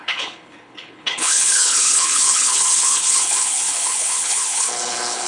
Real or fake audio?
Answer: fake